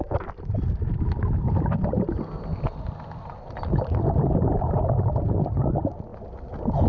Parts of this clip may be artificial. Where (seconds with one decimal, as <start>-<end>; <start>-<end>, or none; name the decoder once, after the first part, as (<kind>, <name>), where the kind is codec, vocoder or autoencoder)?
none